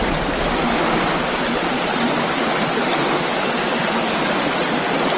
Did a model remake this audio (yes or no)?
no